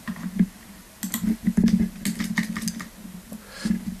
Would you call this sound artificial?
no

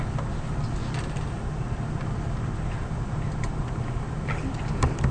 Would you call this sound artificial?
no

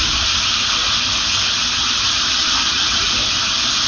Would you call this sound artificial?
yes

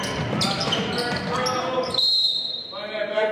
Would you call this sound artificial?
yes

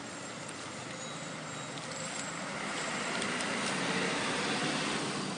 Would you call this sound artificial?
no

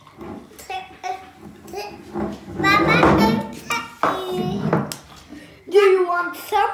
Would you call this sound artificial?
no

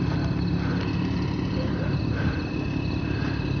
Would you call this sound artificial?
no